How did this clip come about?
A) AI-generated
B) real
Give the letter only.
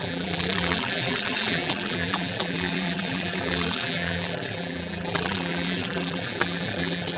A